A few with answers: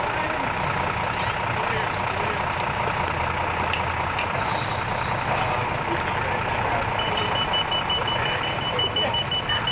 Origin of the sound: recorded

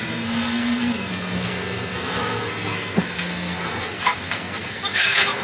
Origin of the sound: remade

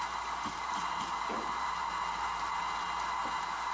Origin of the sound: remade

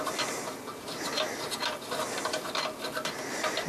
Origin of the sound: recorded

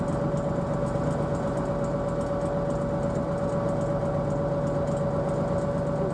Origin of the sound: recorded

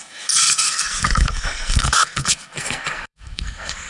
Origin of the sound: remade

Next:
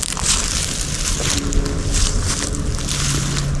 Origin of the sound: recorded